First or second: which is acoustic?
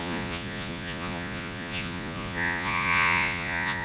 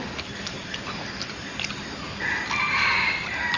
second